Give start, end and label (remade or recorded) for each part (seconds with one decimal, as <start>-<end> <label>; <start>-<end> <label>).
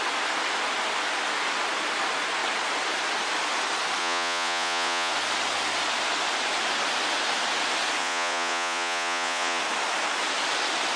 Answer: 0.0-4.0 recorded; 4.0-5.1 remade; 5.1-8.0 recorded; 8.0-9.6 remade; 9.6-11.0 recorded